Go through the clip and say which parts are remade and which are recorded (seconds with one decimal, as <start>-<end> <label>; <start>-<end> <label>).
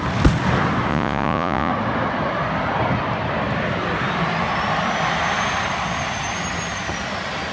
0.0-0.9 recorded; 0.9-1.7 remade; 1.7-7.5 recorded